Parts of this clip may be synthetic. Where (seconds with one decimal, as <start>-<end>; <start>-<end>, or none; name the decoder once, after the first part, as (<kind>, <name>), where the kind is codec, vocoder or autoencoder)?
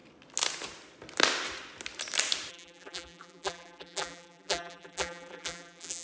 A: 2.5-6.0 (vocoder, BigVGAN v2)